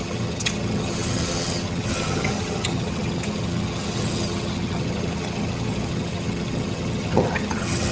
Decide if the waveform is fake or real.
fake